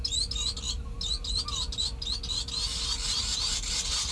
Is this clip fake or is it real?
real